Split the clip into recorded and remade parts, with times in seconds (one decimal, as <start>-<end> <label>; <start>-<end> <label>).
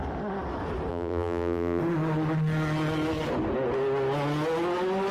0.0-0.9 recorded; 0.9-1.8 remade; 1.8-5.1 recorded